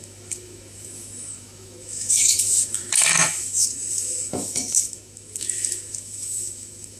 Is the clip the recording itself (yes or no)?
no